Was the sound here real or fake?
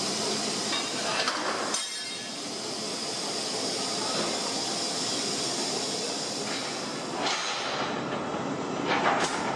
real